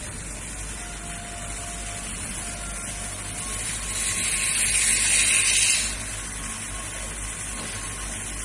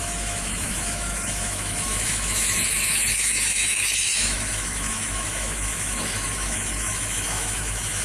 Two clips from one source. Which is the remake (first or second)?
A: second